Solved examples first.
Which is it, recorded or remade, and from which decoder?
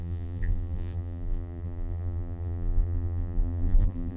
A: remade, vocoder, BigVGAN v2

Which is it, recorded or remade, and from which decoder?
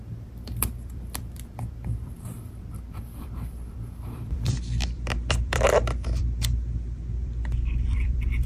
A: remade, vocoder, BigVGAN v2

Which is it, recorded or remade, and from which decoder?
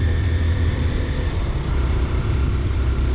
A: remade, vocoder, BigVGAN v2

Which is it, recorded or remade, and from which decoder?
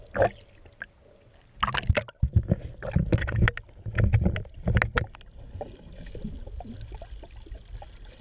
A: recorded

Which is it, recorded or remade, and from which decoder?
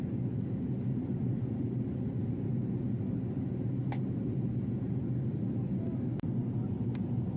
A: recorded